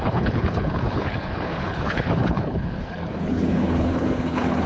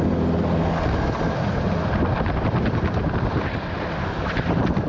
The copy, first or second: first